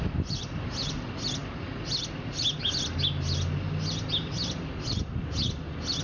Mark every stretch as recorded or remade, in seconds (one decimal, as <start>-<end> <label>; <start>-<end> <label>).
0.0-6.0 recorded

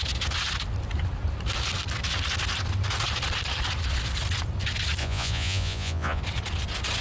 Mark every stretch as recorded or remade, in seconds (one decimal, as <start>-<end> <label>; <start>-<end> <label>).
0.0-5.0 recorded; 5.0-6.2 remade; 6.2-7.0 recorded

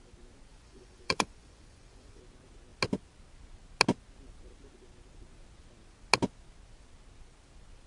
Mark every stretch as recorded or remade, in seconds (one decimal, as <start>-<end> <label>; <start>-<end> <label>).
0.0-0.5 recorded; 0.5-2.2 remade; 2.2-7.9 recorded

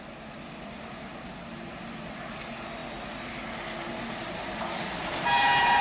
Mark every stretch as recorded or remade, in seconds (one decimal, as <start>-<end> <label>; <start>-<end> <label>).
0.0-5.8 recorded

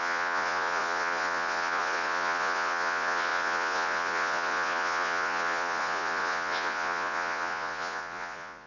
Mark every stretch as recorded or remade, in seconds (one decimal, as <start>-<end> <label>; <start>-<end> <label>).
0.0-8.7 remade

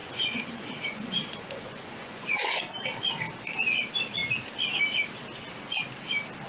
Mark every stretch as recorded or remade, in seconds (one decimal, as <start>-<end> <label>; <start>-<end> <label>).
0.0-2.6 remade; 2.6-6.5 recorded